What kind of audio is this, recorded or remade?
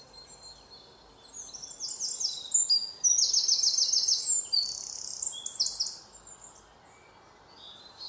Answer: recorded